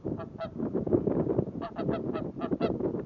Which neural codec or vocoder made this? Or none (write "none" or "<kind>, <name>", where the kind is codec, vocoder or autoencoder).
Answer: vocoder, BigVGAN v2